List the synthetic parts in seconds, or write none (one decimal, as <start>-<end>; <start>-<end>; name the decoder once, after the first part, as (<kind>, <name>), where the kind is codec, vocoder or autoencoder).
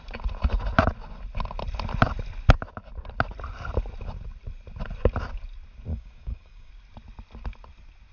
5.9-6.7 (codec, DAC)